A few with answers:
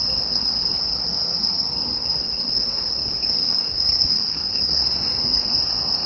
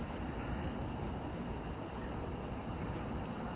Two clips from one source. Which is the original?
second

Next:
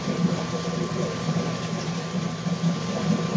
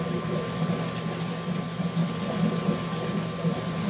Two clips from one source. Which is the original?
second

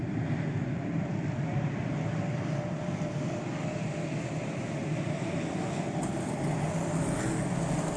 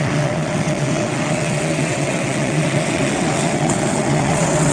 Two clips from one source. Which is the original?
first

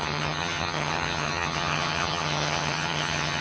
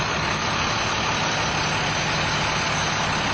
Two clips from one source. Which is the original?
second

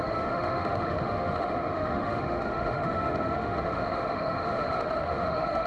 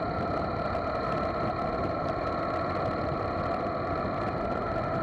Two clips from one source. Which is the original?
second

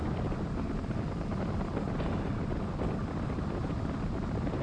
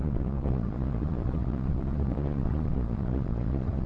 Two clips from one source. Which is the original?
first